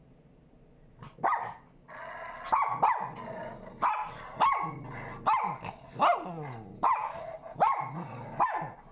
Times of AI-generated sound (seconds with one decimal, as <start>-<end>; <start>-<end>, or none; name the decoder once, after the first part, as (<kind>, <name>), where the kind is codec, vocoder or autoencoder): none